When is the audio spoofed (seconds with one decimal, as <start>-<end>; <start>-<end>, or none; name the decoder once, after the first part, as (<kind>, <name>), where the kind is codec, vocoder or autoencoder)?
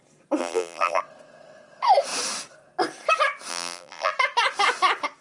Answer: 0.4-1.0 (vocoder, BigVGAN v2); 3.5-4.1